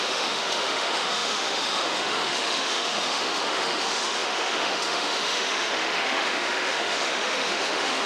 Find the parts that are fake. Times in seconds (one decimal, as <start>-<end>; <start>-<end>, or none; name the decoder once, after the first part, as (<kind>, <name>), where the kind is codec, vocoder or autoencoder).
0.0-8.1 (autoencoder, DAC-VAE)